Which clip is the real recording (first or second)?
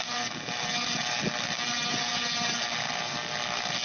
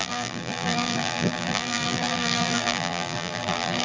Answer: first